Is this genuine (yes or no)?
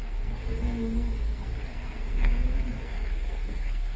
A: no